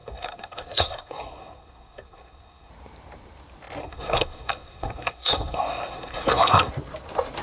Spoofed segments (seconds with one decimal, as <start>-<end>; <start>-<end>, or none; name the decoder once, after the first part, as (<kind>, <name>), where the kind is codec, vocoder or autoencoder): 0.0-2.7 (codec, SNAC); 3.8-6.7